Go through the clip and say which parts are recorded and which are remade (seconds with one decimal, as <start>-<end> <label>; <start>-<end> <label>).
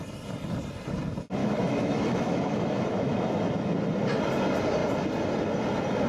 0.0-1.4 recorded; 1.4-3.7 remade; 3.7-6.1 recorded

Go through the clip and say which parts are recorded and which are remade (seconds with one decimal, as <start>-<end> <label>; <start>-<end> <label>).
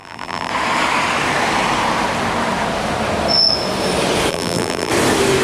0.0-0.5 remade; 0.5-4.3 recorded; 4.3-4.9 remade; 4.9-5.4 recorded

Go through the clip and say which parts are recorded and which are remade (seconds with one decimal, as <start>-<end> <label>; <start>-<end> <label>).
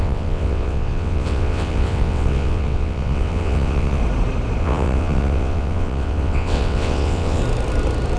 0.0-4.0 remade; 4.0-4.6 recorded; 4.6-7.4 remade; 7.4-8.2 recorded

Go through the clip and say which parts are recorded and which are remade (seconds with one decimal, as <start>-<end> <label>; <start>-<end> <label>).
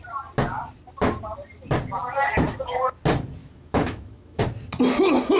0.0-3.4 recorded; 3.4-4.4 remade; 4.4-5.4 recorded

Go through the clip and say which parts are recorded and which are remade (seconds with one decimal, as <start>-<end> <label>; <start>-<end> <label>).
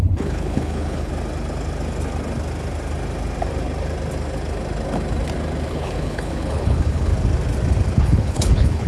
0.0-1.1 remade; 1.1-5.7 recorded; 5.7-7.1 remade; 7.1-8.0 recorded; 8.0-8.9 remade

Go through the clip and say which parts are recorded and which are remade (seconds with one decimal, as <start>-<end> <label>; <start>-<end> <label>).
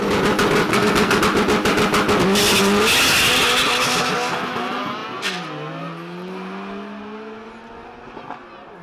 0.0-0.7 recorded; 0.7-1.2 remade; 1.2-8.8 recorded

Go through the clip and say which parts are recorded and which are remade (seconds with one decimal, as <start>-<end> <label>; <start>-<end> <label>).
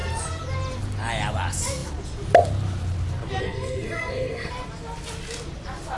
0.0-3.4 recorded; 3.4-4.5 remade; 4.5-6.0 recorded